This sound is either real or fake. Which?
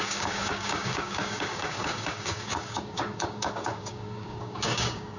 fake